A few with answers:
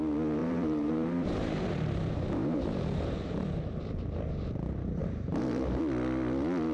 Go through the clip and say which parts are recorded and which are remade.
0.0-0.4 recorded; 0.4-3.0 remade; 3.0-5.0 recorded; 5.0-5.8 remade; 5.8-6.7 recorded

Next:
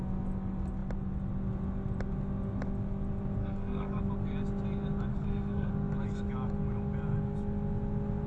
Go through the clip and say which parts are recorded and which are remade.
0.0-3.4 recorded; 3.4-4.0 remade; 4.0-5.1 recorded; 5.1-5.7 remade; 5.7-8.3 recorded

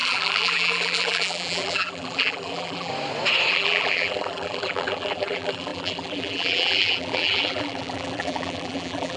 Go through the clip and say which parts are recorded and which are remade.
0.0-2.9 remade; 2.9-3.5 recorded; 3.5-9.2 remade

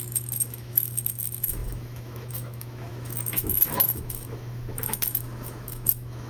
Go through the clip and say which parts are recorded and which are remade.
0.0-6.3 remade

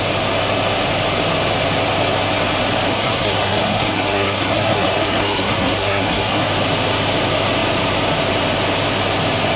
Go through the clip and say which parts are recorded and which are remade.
0.0-2.9 recorded; 2.9-6.5 remade; 6.5-9.6 recorded

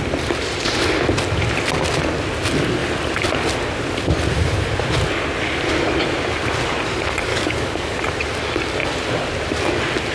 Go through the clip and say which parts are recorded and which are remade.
0.0-7.3 recorded; 7.3-8.0 remade; 8.0-10.1 recorded

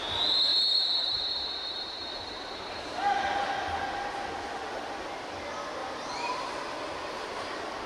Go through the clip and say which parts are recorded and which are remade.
0.0-0.5 recorded; 0.5-3.2 remade; 3.2-5.8 recorded; 5.8-6.5 remade; 6.5-7.9 recorded

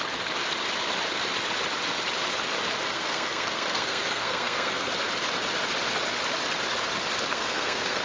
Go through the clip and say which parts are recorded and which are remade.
0.0-2.9 recorded; 2.9-4.9 remade; 4.9-7.3 recorded; 7.3-8.0 remade